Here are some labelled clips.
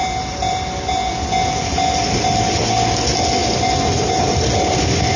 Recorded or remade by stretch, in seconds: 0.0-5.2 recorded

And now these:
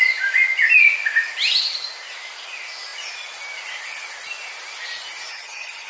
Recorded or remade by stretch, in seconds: 0.0-5.3 recorded; 5.3-5.9 remade

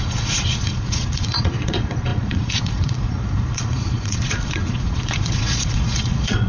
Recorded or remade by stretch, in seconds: 0.0-6.5 remade

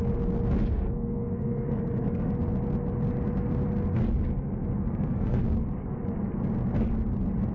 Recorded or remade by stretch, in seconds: 0.0-0.7 recorded; 0.7-2.3 remade; 2.3-4.3 recorded; 4.3-5.4 remade; 5.4-7.5 recorded

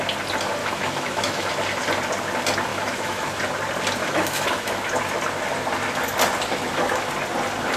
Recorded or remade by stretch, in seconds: 0.0-0.6 recorded; 0.6-1.5 remade; 1.5-2.7 recorded; 2.7-3.4 remade; 3.4-4.0 recorded; 4.0-4.8 remade; 4.8-6.5 recorded; 6.5-7.1 remade; 7.1-7.8 recorded

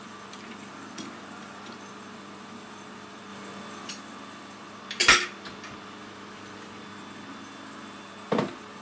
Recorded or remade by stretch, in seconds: 0.0-8.8 recorded